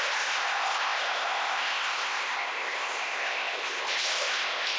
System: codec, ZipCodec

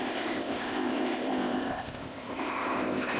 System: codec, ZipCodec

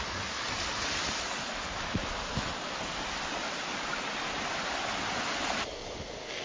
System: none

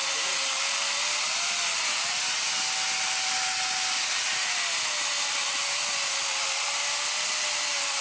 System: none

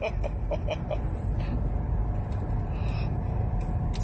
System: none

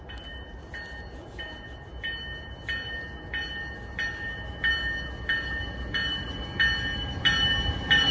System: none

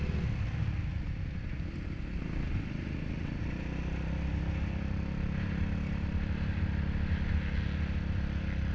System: none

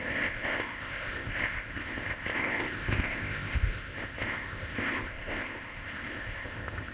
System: codec, ZipCodec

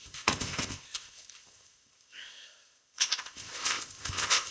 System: codec, ZipCodec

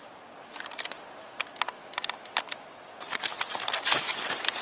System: none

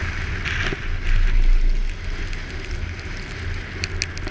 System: none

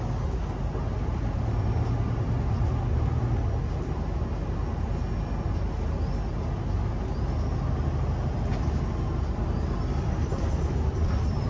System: none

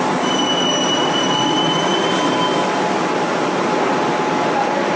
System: none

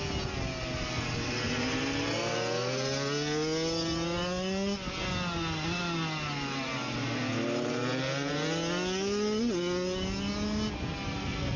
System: none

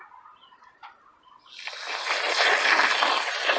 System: none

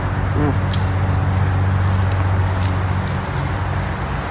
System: none